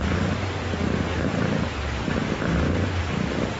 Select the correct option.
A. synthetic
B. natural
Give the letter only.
B